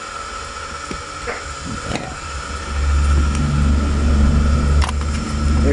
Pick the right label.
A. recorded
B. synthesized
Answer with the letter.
A